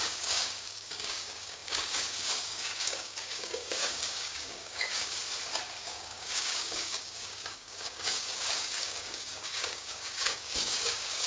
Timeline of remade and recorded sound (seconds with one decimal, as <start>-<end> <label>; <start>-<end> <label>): 0.0-5.2 remade; 5.2-5.8 recorded; 5.8-11.3 remade